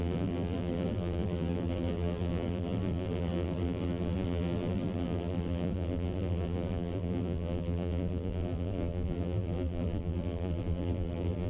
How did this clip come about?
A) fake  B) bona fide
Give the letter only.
A